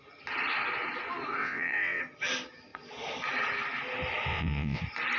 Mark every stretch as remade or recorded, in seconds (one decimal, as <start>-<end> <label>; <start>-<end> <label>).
0.0-1.4 recorded; 1.4-2.0 remade; 2.0-4.3 recorded; 4.3-4.8 remade; 4.8-5.2 recorded